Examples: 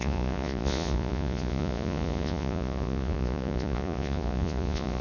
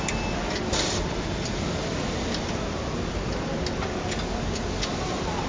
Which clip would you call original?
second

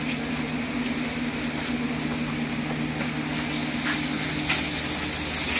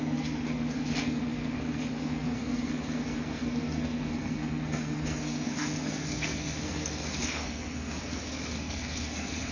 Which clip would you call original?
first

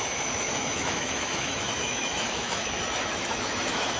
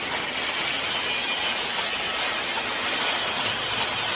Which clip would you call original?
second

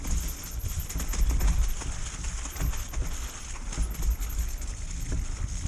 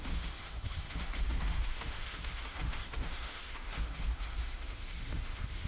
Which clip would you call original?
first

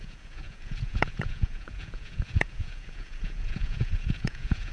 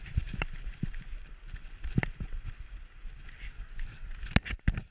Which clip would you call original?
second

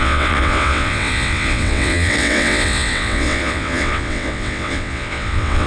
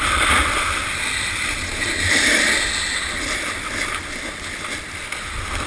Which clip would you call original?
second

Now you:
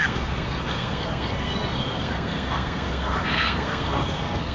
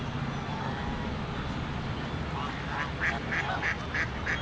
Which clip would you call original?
second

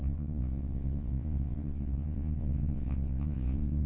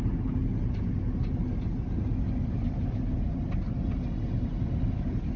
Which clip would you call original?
second